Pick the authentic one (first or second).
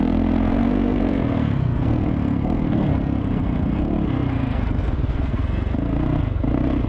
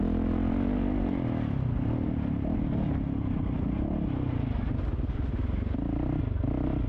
second